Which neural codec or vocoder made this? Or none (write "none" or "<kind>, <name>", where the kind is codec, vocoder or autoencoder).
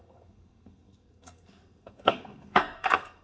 codec, SNAC